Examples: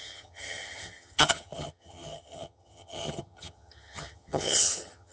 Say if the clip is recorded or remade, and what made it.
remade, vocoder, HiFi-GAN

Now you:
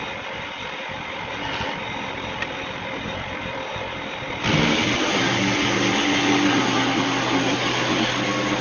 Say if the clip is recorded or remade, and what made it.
recorded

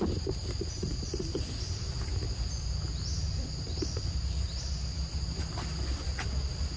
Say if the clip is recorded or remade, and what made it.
recorded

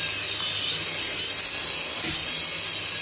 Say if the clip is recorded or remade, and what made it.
recorded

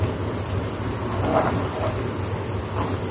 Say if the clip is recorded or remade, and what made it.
recorded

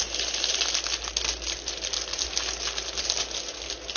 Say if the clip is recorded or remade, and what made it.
recorded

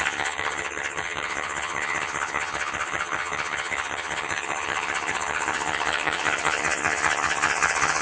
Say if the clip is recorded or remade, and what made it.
remade, vocoder, HiFi-GAN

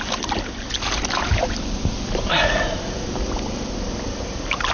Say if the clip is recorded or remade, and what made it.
recorded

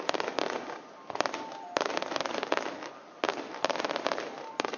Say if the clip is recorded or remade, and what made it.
recorded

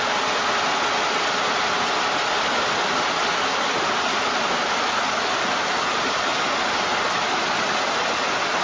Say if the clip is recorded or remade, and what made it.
recorded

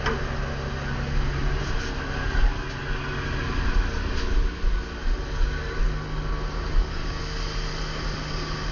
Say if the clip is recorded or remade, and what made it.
recorded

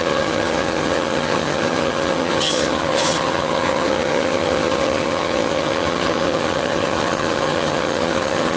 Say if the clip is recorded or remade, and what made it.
remade, vocoder, HiFi-GAN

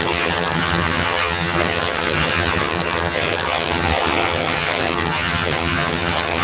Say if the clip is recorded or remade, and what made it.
remade, vocoder, HiFi-GAN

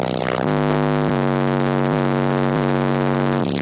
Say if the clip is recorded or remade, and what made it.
recorded